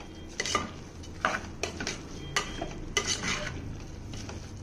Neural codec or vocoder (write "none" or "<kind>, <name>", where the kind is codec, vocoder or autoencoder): none